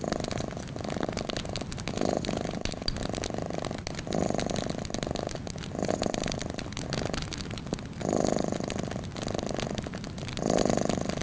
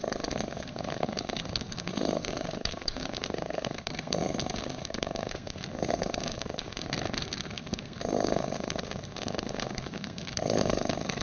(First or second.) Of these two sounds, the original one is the first